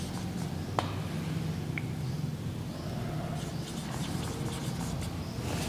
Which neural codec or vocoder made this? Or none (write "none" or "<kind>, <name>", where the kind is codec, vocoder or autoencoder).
none